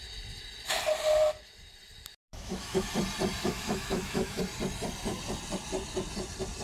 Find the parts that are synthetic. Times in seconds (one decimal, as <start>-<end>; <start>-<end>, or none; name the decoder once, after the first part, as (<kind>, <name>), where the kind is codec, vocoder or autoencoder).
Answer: 2.1-2.9 (autoencoder, DAC-VAE); 3.4-4.4